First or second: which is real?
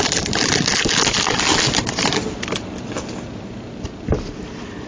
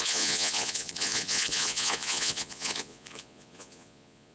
first